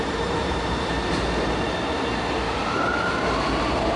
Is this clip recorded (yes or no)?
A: no